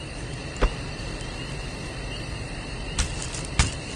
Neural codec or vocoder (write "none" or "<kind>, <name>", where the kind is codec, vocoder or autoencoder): none